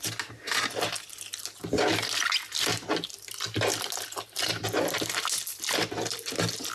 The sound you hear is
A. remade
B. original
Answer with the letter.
B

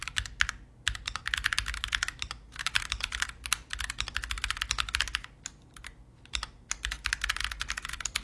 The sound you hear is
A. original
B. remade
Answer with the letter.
A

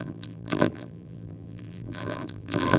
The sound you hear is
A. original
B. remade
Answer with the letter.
B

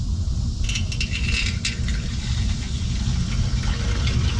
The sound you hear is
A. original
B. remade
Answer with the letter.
A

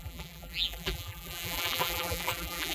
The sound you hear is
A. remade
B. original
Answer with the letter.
A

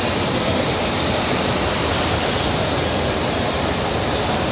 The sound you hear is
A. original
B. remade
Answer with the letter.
B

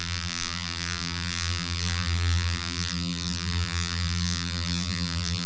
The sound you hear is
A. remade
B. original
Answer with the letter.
A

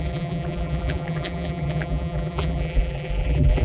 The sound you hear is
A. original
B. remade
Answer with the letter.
B